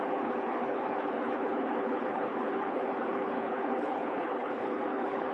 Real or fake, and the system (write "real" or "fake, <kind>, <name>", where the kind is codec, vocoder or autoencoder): fake, codec, HILCodec